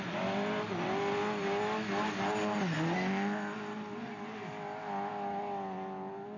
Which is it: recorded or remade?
recorded